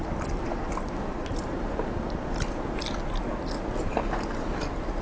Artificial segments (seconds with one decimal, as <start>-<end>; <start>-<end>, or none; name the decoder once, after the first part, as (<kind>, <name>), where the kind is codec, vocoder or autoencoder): none